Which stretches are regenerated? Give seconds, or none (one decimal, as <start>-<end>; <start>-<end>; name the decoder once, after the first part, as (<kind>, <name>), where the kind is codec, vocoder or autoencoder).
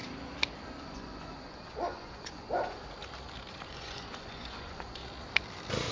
0.8-2.8 (vocoder, Vocos); 3.7-5.0